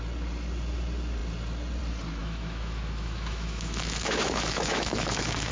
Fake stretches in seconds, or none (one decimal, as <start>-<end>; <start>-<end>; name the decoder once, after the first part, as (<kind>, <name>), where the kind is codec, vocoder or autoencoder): 2.2-5.5 (autoencoder, DAC-VAE)